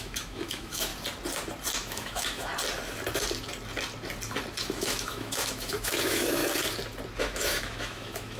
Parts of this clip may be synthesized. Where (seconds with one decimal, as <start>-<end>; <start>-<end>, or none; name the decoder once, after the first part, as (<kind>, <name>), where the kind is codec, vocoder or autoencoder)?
0.0-0.9 (autoencoder, DAC-VAE); 1.7-2.5; 4.6-6.4; 7.2-8.4

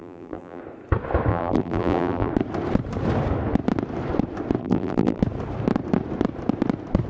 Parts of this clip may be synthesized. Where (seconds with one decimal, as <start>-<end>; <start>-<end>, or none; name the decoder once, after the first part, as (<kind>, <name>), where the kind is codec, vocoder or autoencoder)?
0.0-0.6 (vocoder, BigVGAN v2); 1.3-2.3; 4.6-5.2

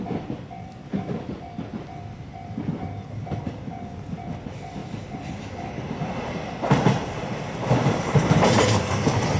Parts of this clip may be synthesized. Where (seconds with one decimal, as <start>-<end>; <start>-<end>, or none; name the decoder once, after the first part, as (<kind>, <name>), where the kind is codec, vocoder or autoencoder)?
none

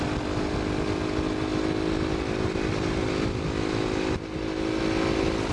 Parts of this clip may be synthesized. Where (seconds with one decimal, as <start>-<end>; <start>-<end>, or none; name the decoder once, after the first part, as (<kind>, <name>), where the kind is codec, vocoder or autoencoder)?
none